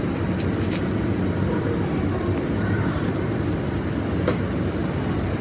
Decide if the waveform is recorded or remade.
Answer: recorded